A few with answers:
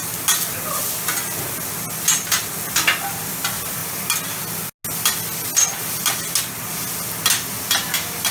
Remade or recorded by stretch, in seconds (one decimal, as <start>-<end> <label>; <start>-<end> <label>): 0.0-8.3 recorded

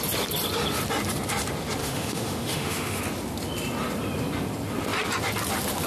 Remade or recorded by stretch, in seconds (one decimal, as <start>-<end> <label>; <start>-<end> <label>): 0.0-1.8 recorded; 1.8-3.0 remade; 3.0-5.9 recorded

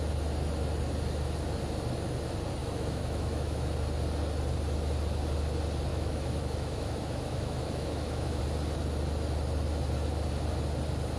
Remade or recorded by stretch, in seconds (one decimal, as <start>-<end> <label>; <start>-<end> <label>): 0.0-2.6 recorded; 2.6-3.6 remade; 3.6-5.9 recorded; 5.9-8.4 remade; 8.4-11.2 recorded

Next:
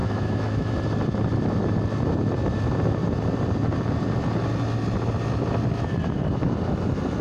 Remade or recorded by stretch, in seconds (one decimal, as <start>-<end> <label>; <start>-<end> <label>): 0.0-0.7 remade; 0.7-7.2 recorded

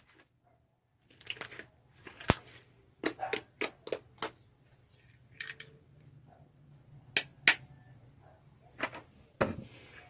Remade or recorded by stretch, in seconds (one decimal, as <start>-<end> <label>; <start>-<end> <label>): 0.0-10.1 recorded

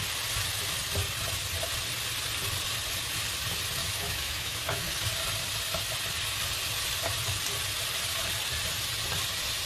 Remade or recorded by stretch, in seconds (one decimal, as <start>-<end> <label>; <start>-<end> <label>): 0.0-3.8 recorded; 3.8-4.9 remade; 4.9-9.7 recorded

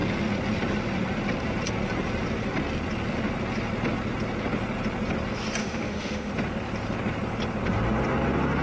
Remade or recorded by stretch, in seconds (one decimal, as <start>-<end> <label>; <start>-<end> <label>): 0.0-5.6 recorded; 5.6-6.3 remade; 6.3-8.6 recorded